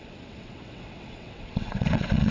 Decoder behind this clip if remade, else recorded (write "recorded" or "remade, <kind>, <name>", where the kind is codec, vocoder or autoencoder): remade, vocoder, WaveNeXt